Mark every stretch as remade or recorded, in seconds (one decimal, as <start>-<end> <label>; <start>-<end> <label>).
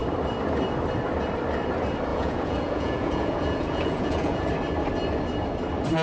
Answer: 0.0-2.1 recorded; 2.1-4.5 remade; 4.5-6.0 recorded